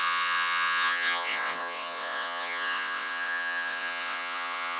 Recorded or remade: remade